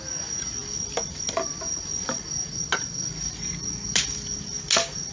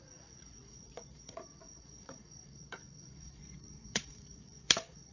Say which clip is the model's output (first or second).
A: second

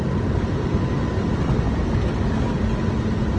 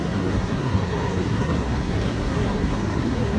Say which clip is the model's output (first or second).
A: second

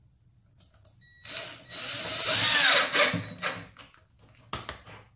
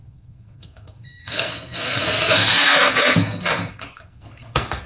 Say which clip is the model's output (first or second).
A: second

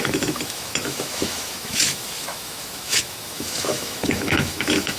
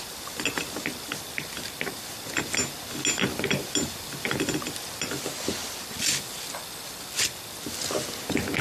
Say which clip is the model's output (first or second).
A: first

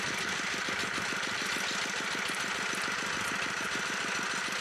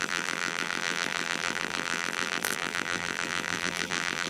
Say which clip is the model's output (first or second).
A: second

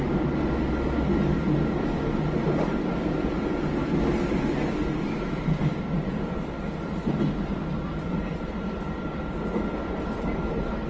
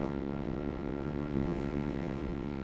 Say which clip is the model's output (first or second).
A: second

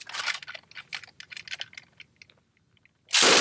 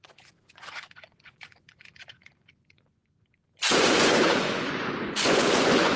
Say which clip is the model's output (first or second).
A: second